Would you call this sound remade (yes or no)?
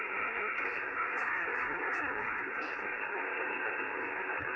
yes